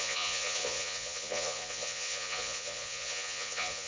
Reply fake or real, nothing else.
fake